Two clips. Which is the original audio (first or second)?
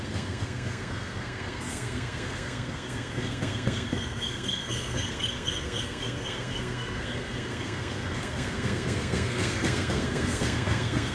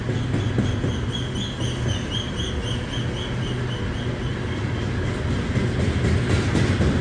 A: second